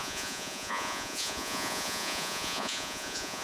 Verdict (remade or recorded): remade